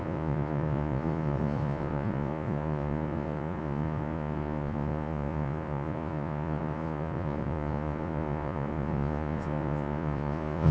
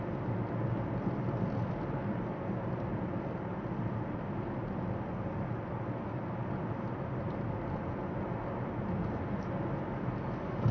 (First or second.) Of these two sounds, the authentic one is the second